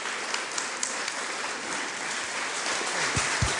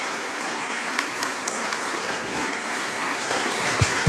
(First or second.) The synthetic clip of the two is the second